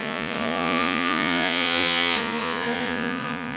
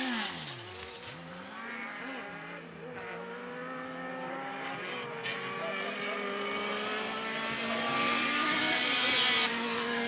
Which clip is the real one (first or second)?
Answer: second